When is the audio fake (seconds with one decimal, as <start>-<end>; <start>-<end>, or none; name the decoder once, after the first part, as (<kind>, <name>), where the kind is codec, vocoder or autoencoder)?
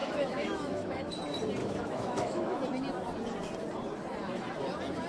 0.0-1.1 (autoencoder, DAC-VAE); 1.6-2.6